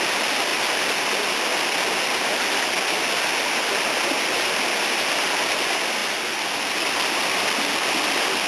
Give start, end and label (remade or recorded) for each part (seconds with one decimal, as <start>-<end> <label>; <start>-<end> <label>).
0.0-8.5 recorded

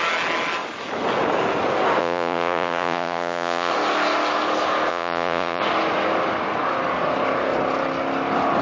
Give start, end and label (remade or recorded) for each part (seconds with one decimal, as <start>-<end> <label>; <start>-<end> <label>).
0.0-2.0 recorded; 2.0-3.7 remade; 3.7-4.9 recorded; 4.9-5.6 remade; 5.6-8.6 recorded

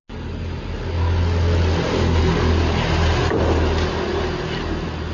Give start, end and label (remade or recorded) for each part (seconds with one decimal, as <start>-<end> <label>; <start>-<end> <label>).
0.0-5.1 recorded

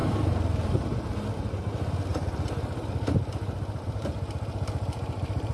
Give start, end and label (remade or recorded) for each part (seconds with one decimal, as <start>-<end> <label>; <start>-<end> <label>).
0.0-1.6 remade; 1.6-2.1 recorded; 2.1-5.5 remade

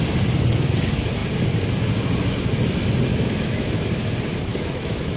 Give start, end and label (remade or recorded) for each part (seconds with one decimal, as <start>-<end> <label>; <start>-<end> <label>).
0.0-3.1 recorded; 3.1-3.8 remade; 3.8-4.5 recorded; 4.5-5.2 remade

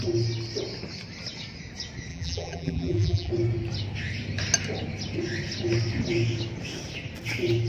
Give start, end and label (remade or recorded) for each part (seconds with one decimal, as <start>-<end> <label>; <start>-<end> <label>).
0.0-2.1 recorded; 2.1-3.3 remade; 3.3-7.7 recorded

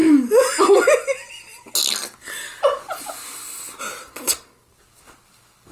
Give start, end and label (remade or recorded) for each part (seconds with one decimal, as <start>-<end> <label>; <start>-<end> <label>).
0.0-2.0 recorded; 2.0-3.8 remade; 3.8-5.7 recorded

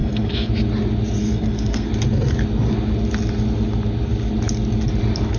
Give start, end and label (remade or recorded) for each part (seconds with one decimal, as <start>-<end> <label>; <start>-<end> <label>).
0.0-0.5 remade; 0.5-1.2 recorded; 1.2-1.9 remade; 1.9-5.4 recorded